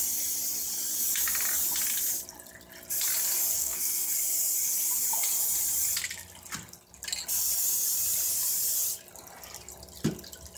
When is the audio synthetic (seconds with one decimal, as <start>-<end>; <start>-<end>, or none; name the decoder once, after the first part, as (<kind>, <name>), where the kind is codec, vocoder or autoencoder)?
3.6-4.1 (codec, SNAC)

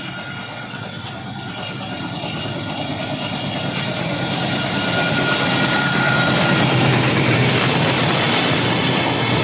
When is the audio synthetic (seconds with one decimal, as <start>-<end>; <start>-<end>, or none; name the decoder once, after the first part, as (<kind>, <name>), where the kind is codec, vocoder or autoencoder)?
0.5-1.1 (vocoder, WaveNeXt)

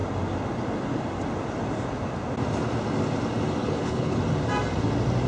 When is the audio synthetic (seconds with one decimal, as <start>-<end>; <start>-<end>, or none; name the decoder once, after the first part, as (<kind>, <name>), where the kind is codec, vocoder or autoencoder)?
3.6-4.2 (codec, HILCodec)